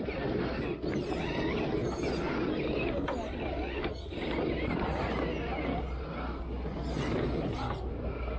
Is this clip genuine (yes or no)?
yes